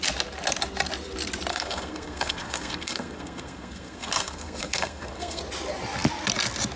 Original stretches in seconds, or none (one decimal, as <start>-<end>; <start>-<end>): 0.0-1.5; 5.4-6.8